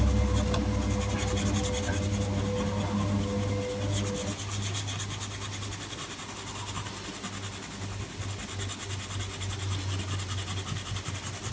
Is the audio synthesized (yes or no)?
no